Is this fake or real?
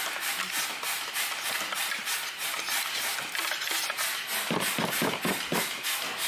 real